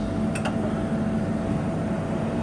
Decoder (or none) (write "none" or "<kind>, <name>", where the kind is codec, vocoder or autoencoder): none